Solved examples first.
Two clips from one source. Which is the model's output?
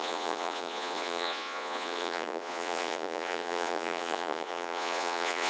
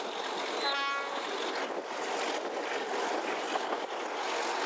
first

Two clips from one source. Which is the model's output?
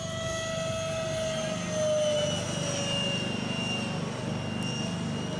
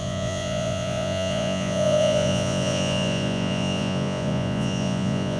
second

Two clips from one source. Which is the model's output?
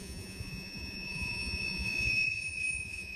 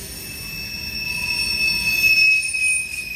first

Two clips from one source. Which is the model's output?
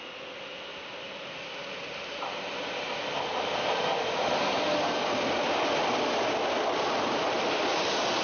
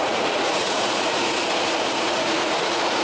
second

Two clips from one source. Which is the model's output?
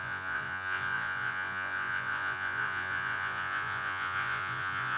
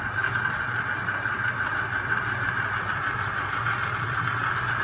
first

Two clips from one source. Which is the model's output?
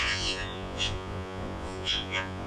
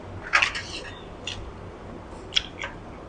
first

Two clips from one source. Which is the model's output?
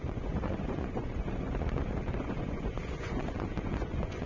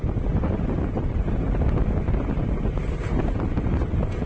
first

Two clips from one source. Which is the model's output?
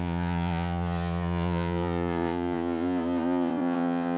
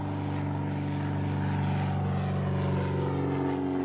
first